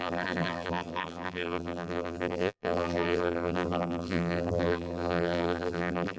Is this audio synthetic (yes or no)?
yes